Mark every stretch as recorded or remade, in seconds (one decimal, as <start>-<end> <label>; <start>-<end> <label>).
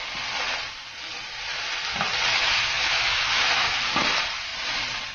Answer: 0.0-2.3 recorded; 2.3-3.8 remade; 3.8-5.1 recorded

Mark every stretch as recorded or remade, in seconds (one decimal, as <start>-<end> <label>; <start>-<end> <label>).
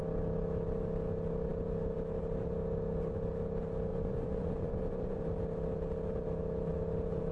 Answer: 0.0-3.9 recorded; 3.9-5.2 remade; 5.2-7.3 recorded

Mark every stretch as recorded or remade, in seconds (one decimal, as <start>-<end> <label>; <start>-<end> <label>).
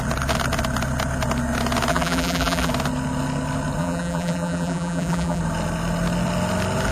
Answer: 0.0-1.9 recorded; 1.9-2.7 remade; 2.7-3.8 recorded; 3.8-5.4 remade; 5.4-6.9 recorded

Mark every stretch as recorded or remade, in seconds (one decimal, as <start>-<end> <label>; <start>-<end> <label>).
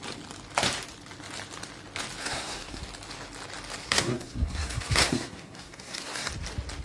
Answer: 0.0-2.2 recorded; 2.2-2.8 remade; 2.8-3.8 recorded; 3.8-6.3 remade; 6.3-6.8 recorded